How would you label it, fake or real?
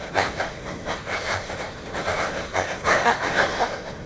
fake